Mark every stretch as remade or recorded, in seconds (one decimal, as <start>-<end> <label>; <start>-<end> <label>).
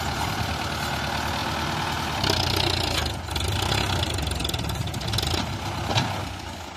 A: 0.0-6.2 recorded; 6.2-6.8 remade